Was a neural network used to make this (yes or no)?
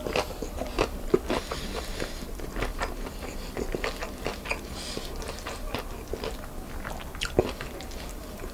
no